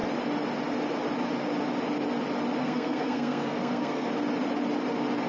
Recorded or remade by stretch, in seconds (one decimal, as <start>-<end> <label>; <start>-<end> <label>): 0.0-2.6 recorded; 2.6-4.1 remade; 4.1-5.3 recorded